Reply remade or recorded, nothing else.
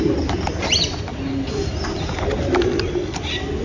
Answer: recorded